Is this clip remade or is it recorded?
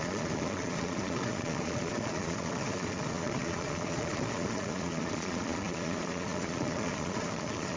remade